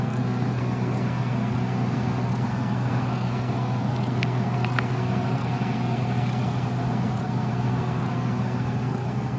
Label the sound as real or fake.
fake